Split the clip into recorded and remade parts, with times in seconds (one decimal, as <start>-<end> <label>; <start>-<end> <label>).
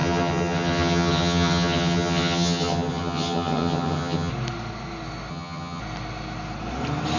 0.0-4.3 remade; 4.3-5.3 recorded; 5.3-5.8 remade; 5.8-7.2 recorded